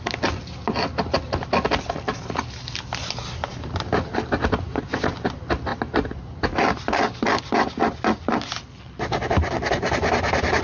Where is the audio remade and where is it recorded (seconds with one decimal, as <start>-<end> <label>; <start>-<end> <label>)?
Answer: 0.0-10.6 recorded